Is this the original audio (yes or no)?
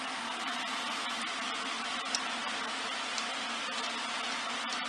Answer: yes